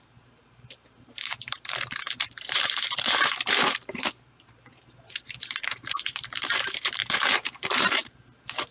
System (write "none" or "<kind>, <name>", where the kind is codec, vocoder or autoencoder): vocoder, BigVGAN v2